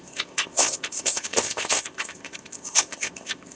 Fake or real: fake